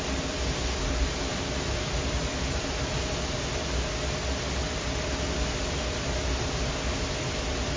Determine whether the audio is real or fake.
real